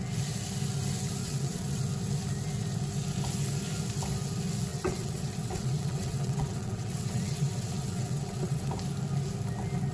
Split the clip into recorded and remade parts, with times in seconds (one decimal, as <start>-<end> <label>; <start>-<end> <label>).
0.0-1.2 recorded; 1.2-1.8 remade; 1.8-4.7 recorded; 4.7-8.7 remade; 8.7-9.9 recorded